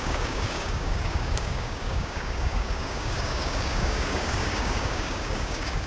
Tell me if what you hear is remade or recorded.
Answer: remade